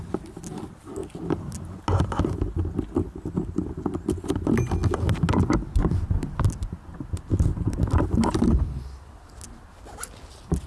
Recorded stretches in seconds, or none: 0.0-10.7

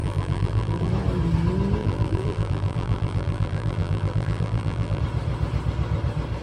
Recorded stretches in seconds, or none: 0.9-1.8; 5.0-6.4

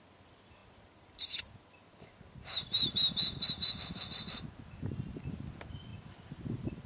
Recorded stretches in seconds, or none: 0.0-0.6; 4.4-5.9

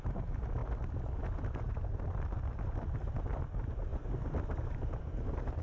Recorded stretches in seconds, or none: 0.0-5.6